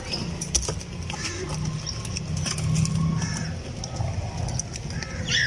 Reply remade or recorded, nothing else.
recorded